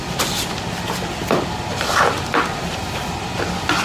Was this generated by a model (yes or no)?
no